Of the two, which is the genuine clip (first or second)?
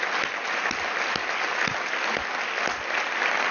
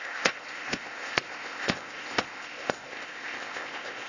first